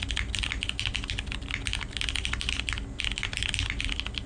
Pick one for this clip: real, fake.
real